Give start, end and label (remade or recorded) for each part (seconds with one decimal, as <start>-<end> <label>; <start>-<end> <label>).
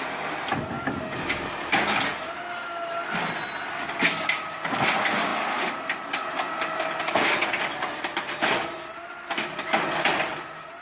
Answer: 0.0-10.8 recorded